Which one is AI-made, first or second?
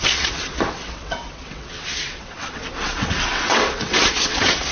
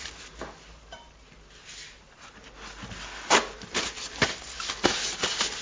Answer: first